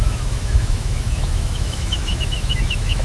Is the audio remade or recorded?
remade